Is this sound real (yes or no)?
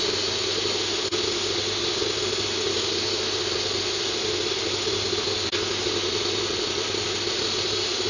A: yes